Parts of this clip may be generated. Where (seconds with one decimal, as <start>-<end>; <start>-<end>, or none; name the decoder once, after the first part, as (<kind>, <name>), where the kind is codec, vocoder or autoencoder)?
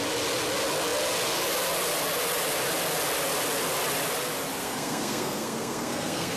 4.6-6.4 (codec, SNAC)